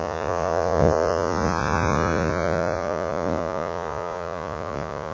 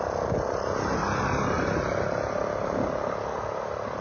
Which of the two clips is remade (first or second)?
first